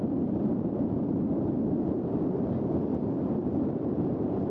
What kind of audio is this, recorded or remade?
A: remade